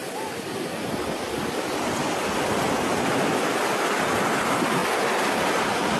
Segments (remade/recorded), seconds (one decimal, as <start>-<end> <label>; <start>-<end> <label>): 0.0-3.3 remade; 3.3-6.0 recorded

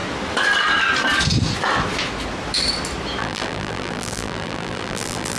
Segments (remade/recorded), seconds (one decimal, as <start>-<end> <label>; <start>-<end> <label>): 0.0-3.2 recorded; 3.2-5.4 remade

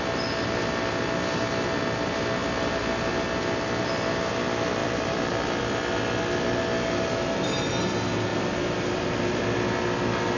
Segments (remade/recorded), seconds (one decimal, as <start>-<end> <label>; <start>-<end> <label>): 0.0-4.8 recorded; 4.8-5.6 remade; 5.6-8.3 recorded; 8.3-9.4 remade; 9.4-10.4 recorded

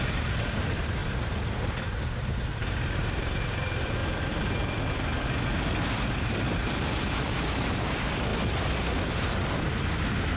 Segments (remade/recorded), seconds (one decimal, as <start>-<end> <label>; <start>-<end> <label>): 0.0-1.0 remade; 1.0-2.0 recorded; 2.0-4.0 remade; 4.0-6.1 recorded; 6.1-8.3 remade; 8.3-10.4 recorded

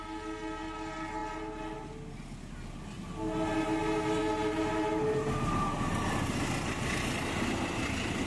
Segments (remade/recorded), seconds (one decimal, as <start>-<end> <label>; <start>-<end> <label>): 0.0-8.3 recorded

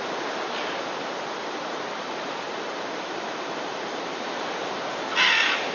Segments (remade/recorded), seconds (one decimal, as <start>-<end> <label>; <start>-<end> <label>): 0.0-1.4 recorded; 1.4-4.8 remade; 4.8-5.7 recorded

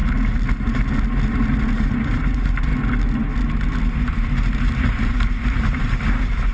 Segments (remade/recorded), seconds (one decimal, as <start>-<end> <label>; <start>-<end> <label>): 0.0-1.7 recorded; 1.7-2.7 remade; 2.7-4.1 recorded; 4.1-6.5 remade